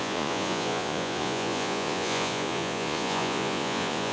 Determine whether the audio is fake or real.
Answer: fake